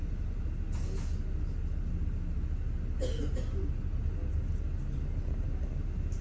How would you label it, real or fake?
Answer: real